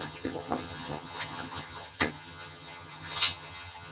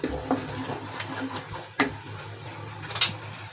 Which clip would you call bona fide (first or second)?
second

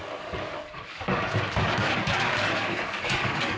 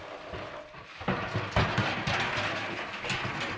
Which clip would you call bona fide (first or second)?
second